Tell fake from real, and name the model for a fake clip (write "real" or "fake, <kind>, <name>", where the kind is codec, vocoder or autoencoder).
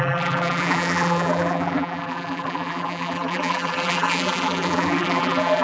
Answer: fake, vocoder, BigVGAN v2